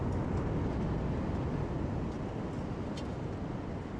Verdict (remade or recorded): recorded